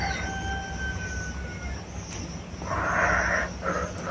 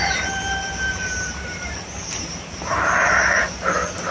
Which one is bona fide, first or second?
first